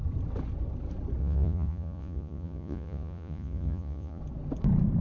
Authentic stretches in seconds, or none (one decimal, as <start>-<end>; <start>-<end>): 0.0-1.2; 4.2-5.0